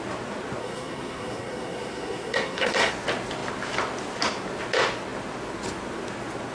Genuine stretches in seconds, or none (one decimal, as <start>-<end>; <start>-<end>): 0.0-0.6; 2.9-6.5